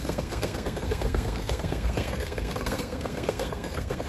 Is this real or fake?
fake